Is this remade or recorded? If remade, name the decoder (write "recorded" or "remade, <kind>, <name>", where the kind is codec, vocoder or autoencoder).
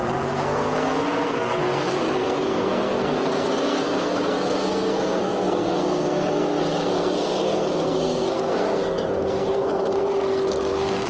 remade, codec, SNAC